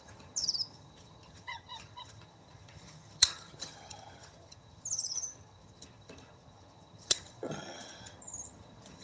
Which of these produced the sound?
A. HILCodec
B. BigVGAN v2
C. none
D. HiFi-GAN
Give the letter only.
D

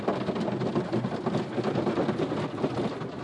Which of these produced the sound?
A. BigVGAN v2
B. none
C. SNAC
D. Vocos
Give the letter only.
B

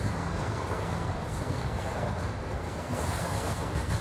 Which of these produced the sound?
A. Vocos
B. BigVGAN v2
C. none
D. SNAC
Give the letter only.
D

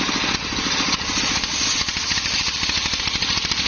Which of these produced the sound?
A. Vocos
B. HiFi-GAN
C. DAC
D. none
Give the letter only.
D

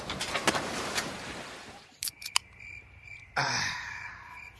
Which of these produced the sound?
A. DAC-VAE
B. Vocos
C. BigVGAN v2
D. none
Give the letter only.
C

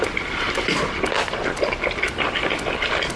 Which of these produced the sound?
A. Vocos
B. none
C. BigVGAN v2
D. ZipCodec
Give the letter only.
B